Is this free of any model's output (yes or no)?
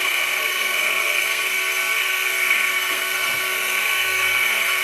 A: no